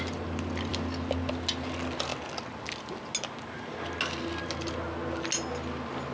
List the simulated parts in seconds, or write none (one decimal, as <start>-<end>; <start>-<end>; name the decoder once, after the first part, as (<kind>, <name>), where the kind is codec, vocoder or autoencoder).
none